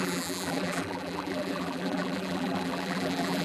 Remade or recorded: remade